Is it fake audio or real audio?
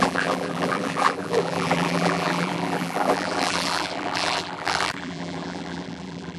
fake